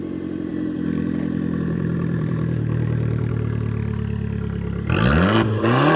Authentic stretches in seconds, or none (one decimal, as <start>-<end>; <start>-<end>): 0.0-0.5; 3.3-6.0